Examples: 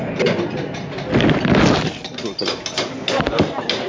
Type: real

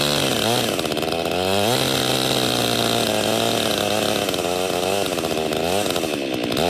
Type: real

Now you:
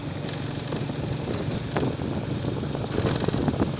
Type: real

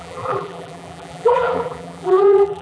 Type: fake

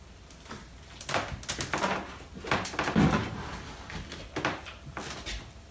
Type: real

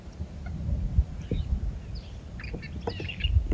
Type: real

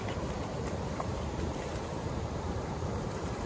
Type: fake